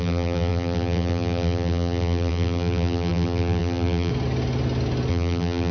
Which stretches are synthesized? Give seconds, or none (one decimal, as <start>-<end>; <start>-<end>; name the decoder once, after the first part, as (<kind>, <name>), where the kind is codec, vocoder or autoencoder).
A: 0.0-4.1 (vocoder, BigVGAN v2); 5.1-5.7